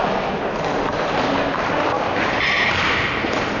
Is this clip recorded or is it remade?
recorded